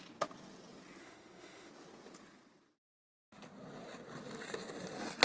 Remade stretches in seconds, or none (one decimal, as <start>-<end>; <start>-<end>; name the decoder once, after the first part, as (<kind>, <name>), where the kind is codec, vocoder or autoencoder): 1.0-1.7 (autoencoder, DAC-VAE)